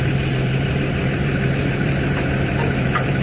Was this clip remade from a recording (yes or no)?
yes